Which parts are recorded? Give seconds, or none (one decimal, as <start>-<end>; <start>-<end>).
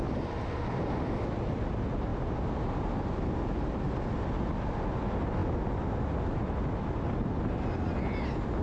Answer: 0.0-8.6